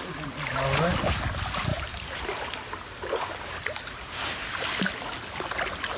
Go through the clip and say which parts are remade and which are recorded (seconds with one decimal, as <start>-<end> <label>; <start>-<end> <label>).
0.0-6.0 recorded